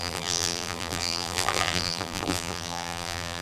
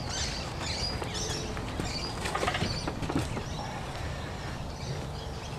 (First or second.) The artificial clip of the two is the first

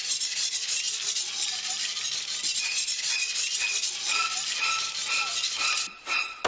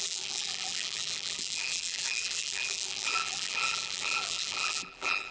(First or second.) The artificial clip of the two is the second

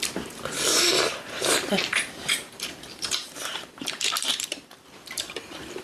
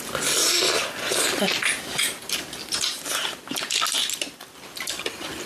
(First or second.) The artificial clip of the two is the first